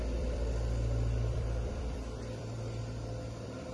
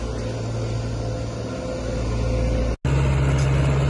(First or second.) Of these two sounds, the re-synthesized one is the first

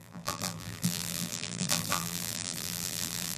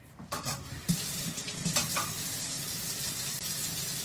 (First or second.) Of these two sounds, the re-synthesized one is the first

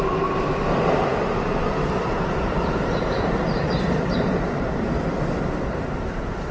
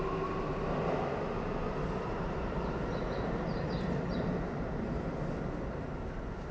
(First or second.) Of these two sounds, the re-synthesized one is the first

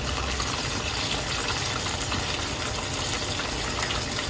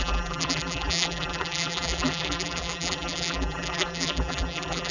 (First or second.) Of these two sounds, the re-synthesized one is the second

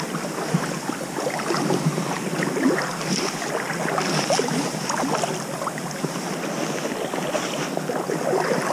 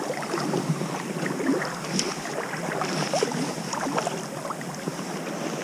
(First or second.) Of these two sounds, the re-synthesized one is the second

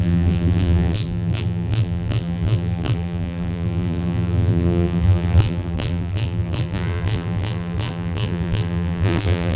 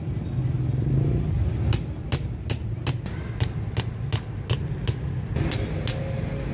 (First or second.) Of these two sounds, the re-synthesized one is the first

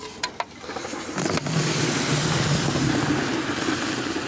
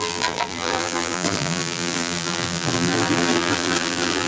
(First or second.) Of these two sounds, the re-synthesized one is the second